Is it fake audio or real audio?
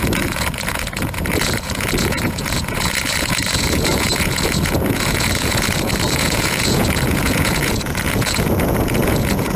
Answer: fake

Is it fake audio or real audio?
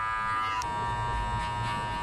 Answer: real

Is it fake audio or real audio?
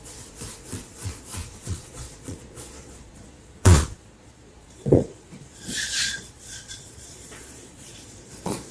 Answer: fake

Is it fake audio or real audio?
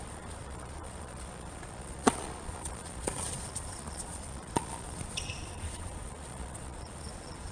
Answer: fake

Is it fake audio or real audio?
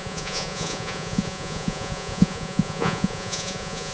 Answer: fake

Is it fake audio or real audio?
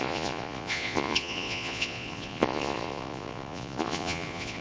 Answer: fake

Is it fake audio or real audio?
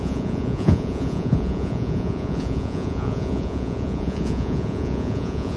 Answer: fake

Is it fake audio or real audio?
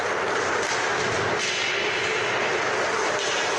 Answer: real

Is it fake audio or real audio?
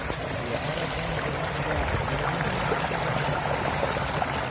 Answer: real